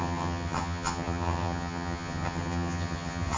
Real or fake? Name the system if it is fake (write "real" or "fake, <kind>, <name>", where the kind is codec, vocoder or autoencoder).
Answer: fake, vocoder, HiFi-GAN